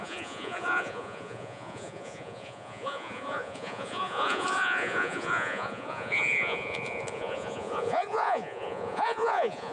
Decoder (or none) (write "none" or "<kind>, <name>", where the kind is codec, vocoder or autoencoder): vocoder, Vocos